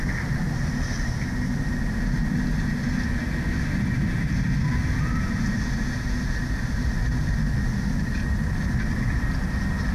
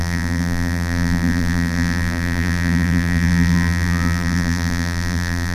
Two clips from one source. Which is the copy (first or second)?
second